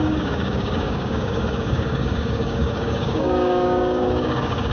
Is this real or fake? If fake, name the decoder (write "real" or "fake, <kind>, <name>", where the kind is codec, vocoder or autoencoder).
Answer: fake, codec, DAC